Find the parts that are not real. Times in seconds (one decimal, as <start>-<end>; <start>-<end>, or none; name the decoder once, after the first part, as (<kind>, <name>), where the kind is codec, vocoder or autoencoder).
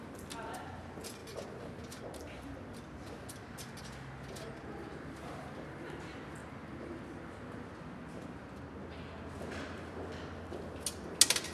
none